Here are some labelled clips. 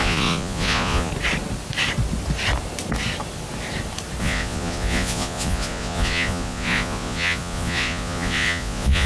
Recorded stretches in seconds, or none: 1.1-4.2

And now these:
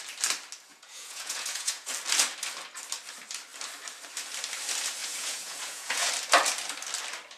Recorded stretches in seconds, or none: 0.0-0.7; 1.9-5.0; 6.1-7.4

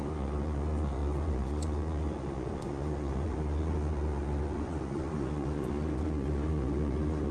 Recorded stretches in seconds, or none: none

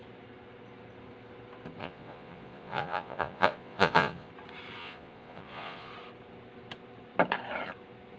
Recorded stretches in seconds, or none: 0.0-1.8; 4.3-4.8; 5.9-8.2

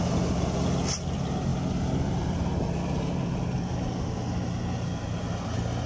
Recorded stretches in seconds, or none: 0.0-5.9

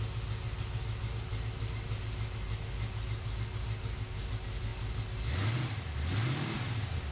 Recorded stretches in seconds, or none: 0.0-7.1

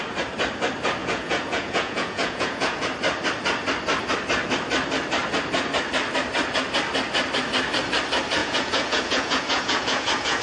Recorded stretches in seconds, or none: 0.0-1.0; 2.8-8.4

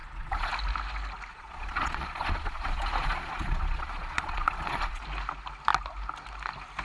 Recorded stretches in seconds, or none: 0.5-1.3; 5.0-6.8